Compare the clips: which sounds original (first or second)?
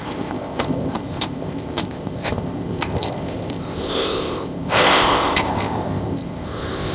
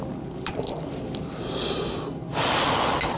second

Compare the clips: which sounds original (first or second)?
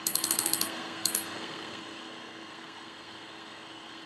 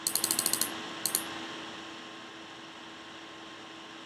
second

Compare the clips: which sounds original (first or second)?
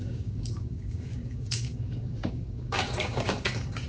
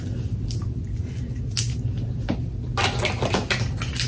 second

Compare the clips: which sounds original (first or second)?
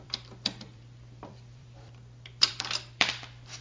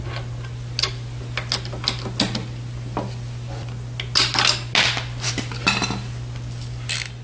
second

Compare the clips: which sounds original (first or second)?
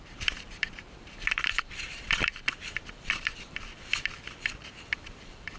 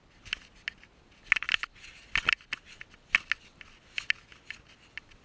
second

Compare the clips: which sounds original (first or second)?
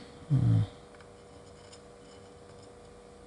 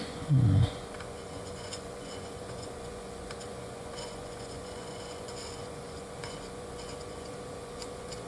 first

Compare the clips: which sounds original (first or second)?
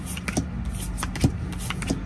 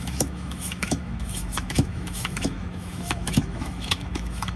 first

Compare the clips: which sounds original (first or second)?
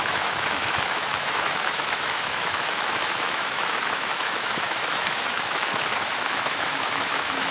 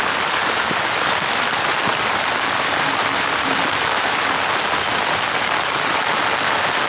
second